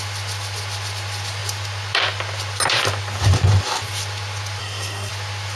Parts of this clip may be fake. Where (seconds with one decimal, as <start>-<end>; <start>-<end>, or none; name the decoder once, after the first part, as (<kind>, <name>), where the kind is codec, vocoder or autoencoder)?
4.6-5.1 (codec, SNAC)